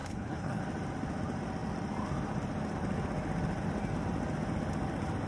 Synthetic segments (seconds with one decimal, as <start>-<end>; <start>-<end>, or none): 0.0-0.6

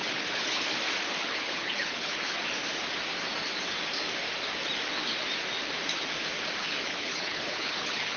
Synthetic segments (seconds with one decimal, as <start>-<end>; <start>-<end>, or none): 0.0-0.7; 1.2-2.4; 6.6-8.2

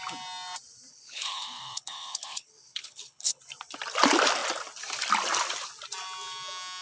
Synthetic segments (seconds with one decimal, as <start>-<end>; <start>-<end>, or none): 0.9-3.4

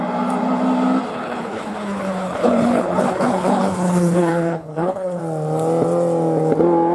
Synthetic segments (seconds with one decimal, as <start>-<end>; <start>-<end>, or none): 1.1-5.2

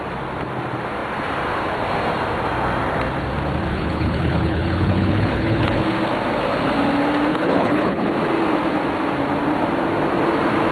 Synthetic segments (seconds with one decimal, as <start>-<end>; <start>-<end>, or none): 3.7-5.8; 7.3-8.1

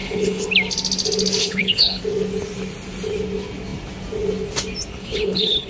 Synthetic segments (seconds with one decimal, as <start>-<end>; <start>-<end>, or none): 0.0-0.5; 1.4-2.0; 4.9-5.7

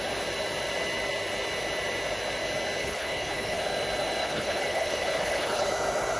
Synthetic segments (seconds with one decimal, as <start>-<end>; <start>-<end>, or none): 2.8-3.6; 4.2-5.7